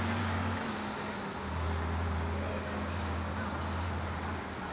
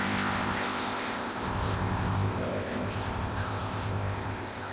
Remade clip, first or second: second